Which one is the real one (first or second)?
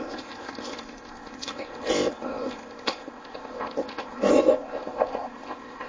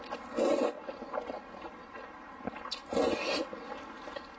second